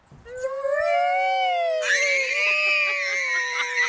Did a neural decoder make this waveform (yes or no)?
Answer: no